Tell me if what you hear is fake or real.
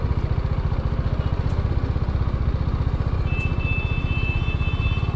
real